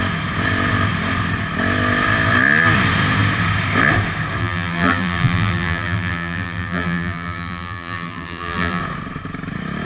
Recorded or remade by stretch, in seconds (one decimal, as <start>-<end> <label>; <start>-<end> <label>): 0.0-4.4 recorded; 4.4-8.8 remade; 8.8-9.8 recorded